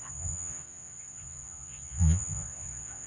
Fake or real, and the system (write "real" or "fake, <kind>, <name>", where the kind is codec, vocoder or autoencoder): fake, vocoder, Vocos